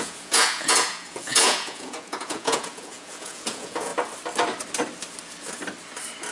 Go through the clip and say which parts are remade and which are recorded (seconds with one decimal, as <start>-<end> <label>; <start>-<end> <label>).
0.0-3.9 remade; 3.9-6.3 recorded